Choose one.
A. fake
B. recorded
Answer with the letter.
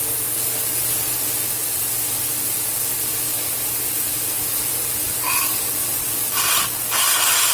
B